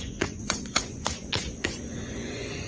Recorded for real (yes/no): no